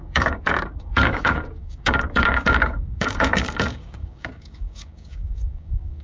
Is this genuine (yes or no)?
no